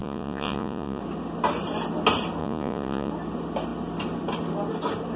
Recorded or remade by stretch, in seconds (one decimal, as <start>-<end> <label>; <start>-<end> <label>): 0.0-1.0 remade; 1.0-2.4 recorded; 2.4-3.1 remade; 3.1-5.2 recorded